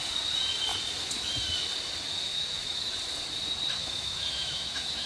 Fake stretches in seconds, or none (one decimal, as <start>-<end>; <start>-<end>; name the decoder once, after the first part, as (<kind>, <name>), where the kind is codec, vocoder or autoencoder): 2.3-2.9 (autoencoder, DAC-VAE); 3.8-5.1